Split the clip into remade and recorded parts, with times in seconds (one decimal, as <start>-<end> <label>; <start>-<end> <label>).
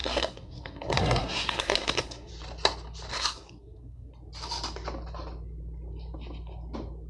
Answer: 0.0-2.3 remade; 2.3-3.1 recorded; 3.1-4.1 remade; 4.1-7.1 recorded